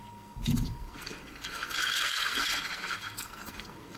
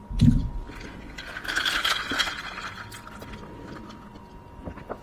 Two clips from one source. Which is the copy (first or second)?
first